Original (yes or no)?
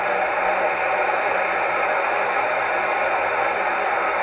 yes